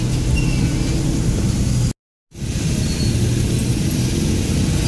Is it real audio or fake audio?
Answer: real